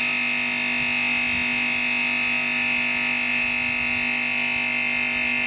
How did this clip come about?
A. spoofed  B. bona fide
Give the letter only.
B